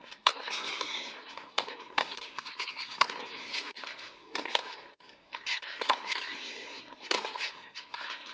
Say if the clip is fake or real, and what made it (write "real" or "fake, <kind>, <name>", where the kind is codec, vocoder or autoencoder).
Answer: fake, codec, SNAC